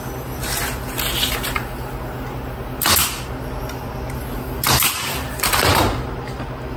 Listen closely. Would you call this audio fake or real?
real